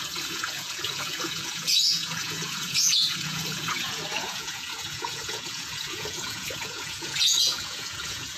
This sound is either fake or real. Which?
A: fake